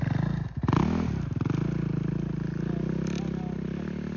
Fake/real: real